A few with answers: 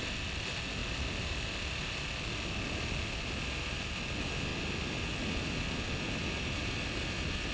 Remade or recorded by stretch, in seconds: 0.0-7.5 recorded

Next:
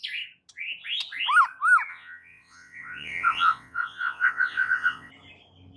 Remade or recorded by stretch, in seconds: 0.0-1.9 recorded; 1.9-5.1 remade; 5.1-5.8 recorded

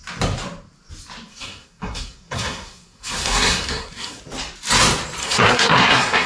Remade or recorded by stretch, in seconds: 0.0-1.3 recorded; 1.3-4.2 remade; 4.2-5.2 recorded; 5.2-6.3 remade

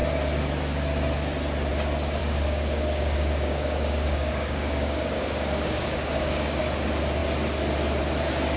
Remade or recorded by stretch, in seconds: 0.0-2.2 recorded; 2.2-6.6 remade; 6.6-8.6 recorded

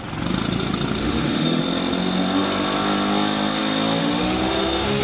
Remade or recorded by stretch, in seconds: 0.0-1.0 recorded; 1.0-1.6 remade; 1.6-4.0 recorded; 4.0-5.0 remade

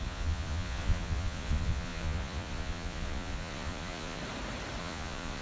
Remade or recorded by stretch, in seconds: 0.0-4.2 remade; 4.2-4.8 recorded; 4.8-5.4 remade

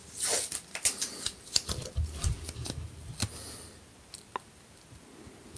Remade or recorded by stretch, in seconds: 0.0-5.6 recorded